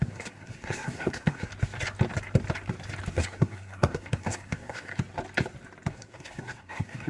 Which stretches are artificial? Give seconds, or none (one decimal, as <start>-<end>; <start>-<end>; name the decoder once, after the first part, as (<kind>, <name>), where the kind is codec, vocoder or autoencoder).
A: 0.0-1.5 (codec, SNAC); 3.1-4.9; 5.9-7.1